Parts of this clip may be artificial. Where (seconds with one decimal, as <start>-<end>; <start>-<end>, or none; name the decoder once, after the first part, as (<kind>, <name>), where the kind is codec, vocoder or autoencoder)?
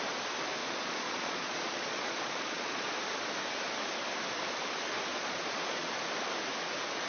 0.6-2.9 (vocoder, Vocos); 5.1-6.0